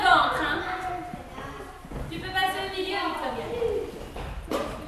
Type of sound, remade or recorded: recorded